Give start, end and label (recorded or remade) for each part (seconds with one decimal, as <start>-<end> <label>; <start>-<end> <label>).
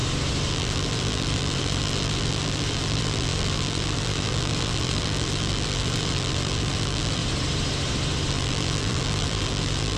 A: 0.0-0.5 recorded; 0.5-7.2 remade; 7.2-8.3 recorded; 8.3-10.0 remade